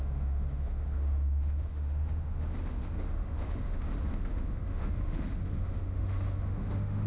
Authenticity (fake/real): fake